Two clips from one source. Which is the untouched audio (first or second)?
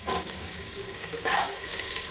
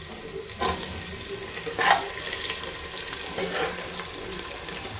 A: second